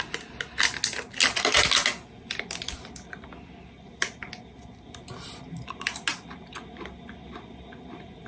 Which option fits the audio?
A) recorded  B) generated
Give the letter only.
A